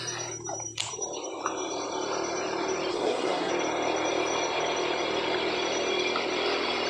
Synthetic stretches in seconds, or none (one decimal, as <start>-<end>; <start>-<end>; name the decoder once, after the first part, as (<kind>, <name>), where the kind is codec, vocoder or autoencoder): 2.9-3.5 (codec, SNAC)